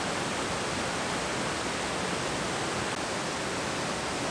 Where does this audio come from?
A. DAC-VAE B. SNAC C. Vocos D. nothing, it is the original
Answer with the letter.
D